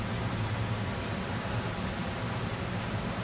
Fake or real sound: real